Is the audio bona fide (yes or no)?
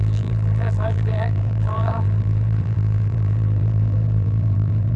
no